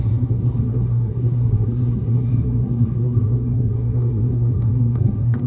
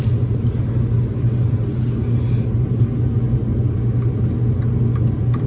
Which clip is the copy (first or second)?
first